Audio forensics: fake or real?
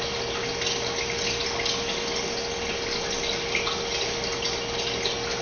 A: real